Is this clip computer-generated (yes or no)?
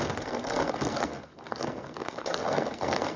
yes